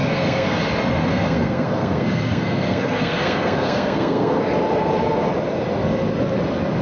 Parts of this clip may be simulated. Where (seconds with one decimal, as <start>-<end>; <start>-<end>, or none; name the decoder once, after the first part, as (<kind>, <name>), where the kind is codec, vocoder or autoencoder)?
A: 0.0-0.6 (codec, SNAC); 1.0-4.4